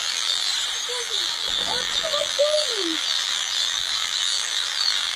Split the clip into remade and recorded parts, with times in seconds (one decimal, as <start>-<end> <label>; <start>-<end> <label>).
0.0-0.5 remade; 0.5-1.0 recorded; 1.0-5.2 remade